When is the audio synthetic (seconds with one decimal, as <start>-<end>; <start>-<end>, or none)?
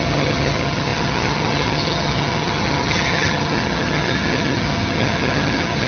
0.0-5.9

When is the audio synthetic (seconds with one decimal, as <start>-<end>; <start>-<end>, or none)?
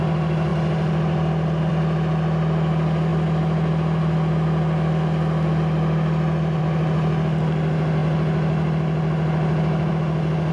none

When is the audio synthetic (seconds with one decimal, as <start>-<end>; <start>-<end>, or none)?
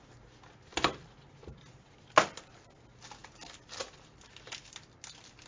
none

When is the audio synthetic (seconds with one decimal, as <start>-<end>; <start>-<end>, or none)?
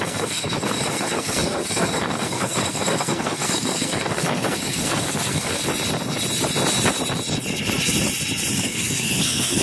0.0-5.6; 8.5-9.6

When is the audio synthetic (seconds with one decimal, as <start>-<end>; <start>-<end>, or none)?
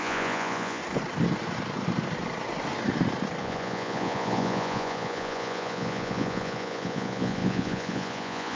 0.0-0.8; 3.4-8.6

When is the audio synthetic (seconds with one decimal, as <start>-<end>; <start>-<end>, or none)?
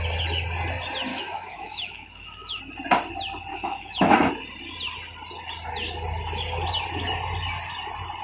1.1-2.6; 3.5-4.3